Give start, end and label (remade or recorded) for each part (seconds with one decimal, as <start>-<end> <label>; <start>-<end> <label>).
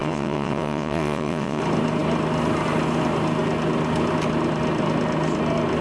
0.0-1.6 remade; 1.6-5.8 recorded